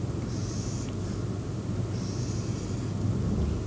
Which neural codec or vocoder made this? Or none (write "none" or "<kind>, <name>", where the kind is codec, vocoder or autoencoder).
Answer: none